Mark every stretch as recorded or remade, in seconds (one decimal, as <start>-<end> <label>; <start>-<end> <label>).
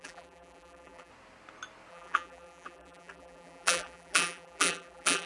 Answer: 0.0-1.1 remade; 1.1-1.9 recorded; 1.9-5.3 remade